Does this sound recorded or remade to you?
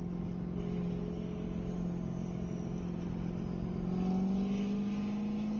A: recorded